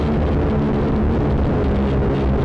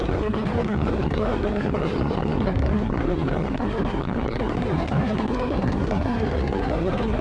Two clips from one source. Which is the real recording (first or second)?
first